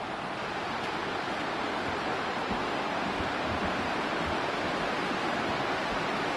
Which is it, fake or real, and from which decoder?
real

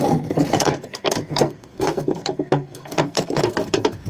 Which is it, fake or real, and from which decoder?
fake, codec, SNAC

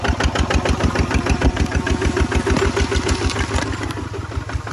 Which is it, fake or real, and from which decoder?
real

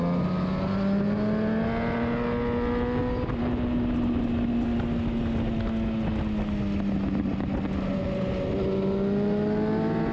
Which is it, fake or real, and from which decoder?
real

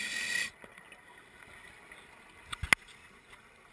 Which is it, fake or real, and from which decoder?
real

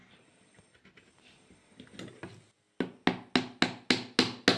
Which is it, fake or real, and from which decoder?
real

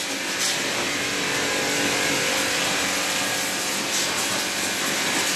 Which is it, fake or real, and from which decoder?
real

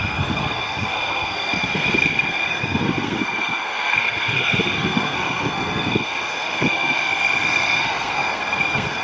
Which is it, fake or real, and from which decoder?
fake, codec, SNAC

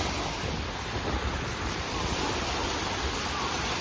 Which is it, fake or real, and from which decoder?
real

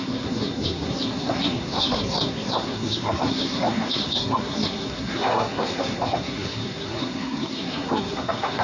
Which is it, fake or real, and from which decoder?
fake, codec, SNAC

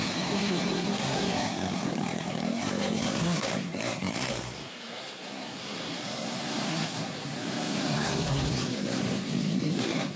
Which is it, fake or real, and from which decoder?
fake, codec, SNAC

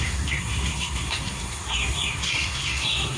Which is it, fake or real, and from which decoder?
fake, codec, SNAC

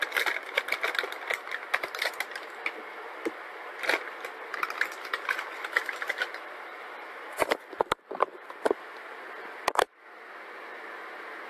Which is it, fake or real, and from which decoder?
real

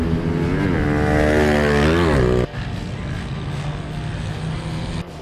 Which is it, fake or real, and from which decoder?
real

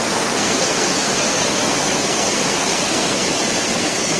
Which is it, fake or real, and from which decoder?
fake, codec, SNAC